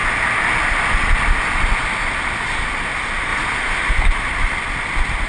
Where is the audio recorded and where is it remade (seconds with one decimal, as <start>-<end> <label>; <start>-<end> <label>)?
0.0-5.3 recorded